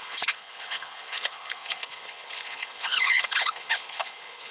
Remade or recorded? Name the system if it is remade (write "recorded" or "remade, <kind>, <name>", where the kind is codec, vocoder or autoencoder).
remade, codec, HILCodec